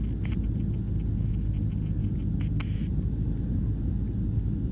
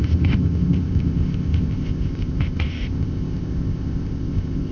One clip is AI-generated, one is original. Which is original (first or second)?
first